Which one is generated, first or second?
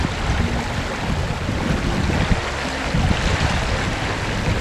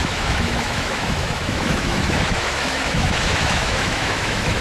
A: second